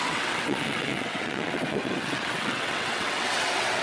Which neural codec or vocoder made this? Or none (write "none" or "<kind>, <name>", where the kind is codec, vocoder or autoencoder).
vocoder, WaveNeXt